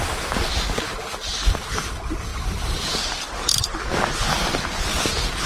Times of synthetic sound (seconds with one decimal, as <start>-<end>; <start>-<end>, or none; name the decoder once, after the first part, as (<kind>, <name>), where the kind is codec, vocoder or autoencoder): none